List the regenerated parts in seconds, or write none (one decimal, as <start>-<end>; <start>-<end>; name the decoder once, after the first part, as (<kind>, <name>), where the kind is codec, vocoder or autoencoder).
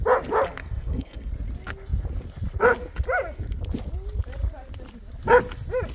0.6-1.3 (codec, SNAC)